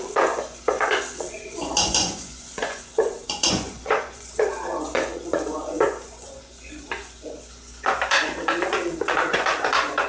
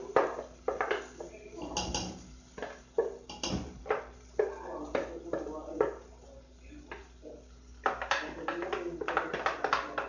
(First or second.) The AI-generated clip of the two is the first